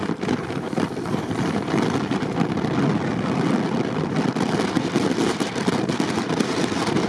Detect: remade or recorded remade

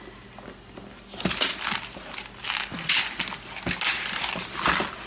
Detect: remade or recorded recorded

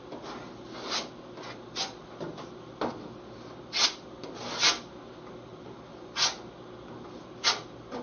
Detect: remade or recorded recorded